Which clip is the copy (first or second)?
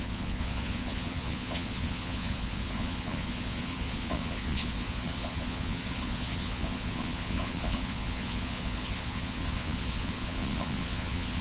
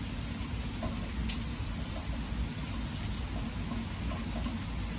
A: first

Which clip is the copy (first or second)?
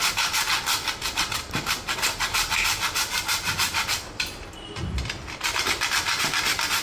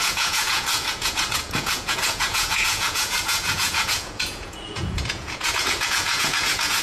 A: second